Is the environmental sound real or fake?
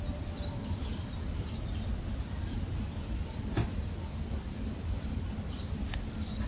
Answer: real